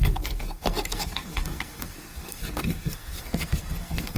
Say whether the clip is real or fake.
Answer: fake